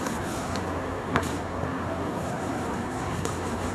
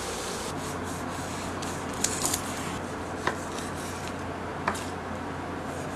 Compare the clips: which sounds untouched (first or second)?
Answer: second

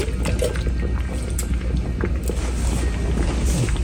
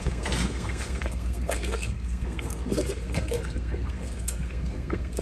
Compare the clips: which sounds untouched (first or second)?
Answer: first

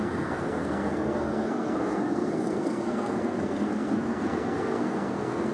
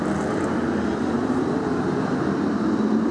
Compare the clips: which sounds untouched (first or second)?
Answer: second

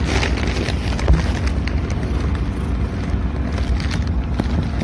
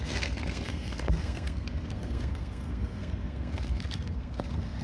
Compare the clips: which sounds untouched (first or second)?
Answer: first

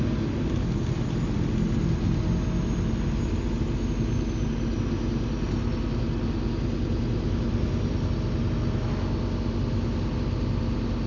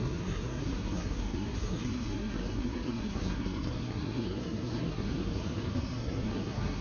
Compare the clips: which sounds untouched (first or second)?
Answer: first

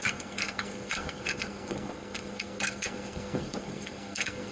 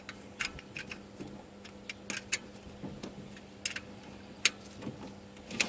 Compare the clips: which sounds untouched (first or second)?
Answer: second